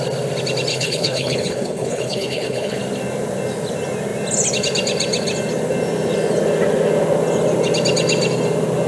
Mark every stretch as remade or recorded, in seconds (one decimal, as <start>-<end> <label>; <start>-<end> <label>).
0.0-0.7 recorded; 0.7-2.8 remade; 2.8-8.9 recorded